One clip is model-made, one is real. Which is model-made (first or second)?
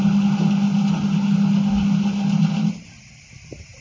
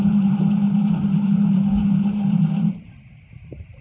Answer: second